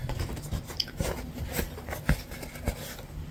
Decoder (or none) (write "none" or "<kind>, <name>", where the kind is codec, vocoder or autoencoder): none